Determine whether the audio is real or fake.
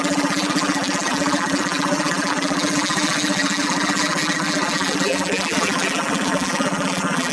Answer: fake